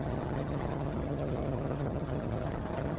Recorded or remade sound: remade